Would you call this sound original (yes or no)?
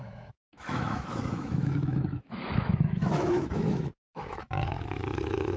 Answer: no